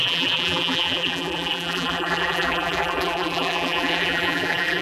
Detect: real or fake fake